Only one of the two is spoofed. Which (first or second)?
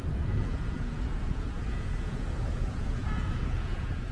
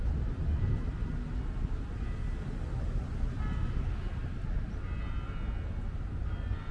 first